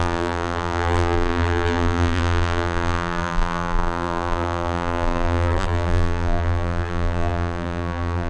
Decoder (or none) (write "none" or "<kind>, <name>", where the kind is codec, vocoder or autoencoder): vocoder, BigVGAN v2